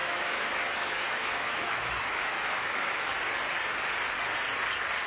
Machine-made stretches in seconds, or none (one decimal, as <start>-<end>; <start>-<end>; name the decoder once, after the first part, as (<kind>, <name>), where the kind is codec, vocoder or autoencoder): 0.0-3.1 (autoencoder, DAC-VAE)